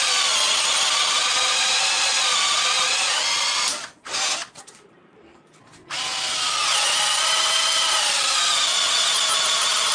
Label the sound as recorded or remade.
recorded